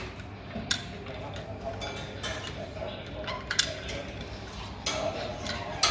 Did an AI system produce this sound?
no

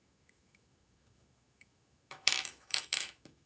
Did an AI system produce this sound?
yes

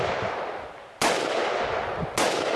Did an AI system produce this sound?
no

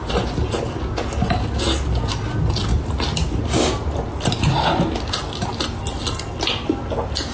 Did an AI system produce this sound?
no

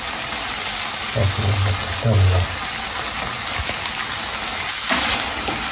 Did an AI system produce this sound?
no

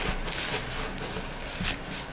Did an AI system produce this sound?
no